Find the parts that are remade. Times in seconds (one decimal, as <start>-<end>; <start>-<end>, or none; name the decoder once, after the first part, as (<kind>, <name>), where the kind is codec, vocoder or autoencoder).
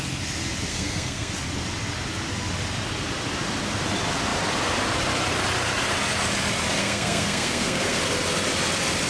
0.7-1.3 (codec, SNAC); 6.8-8.0